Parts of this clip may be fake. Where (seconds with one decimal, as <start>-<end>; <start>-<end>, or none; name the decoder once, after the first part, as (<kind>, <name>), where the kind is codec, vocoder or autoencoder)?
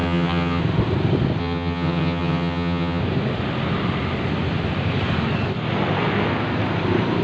0.0-0.6 (vocoder, HiFi-GAN); 1.4-3.0